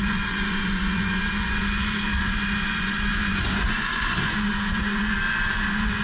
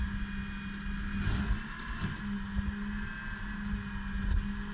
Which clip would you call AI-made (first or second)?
first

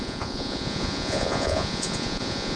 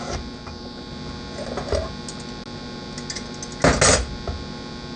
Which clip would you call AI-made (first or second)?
first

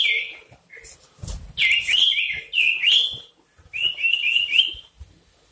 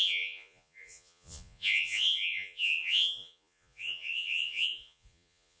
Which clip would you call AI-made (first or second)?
second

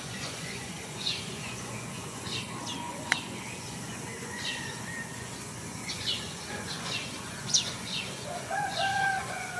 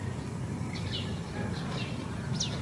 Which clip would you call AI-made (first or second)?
first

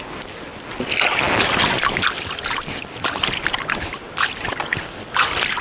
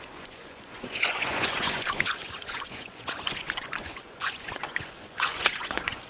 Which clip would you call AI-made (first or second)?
second